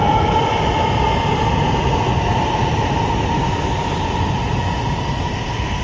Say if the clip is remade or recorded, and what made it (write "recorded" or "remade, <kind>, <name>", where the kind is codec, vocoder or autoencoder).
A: recorded